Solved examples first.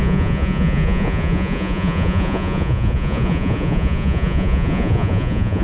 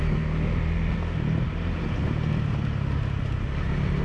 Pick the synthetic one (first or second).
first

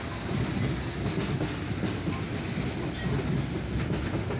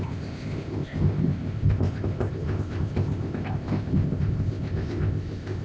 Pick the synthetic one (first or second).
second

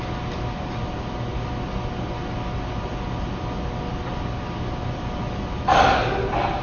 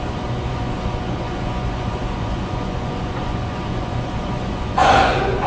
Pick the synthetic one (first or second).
second